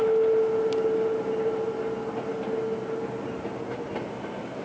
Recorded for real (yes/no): yes